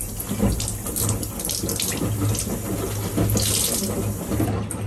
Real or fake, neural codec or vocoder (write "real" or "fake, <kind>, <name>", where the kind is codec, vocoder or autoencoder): real